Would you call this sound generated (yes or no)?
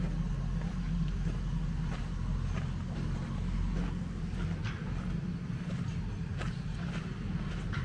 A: no